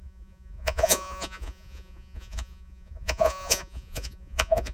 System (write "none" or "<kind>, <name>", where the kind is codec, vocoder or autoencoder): vocoder, Vocos